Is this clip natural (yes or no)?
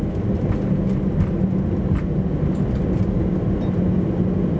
yes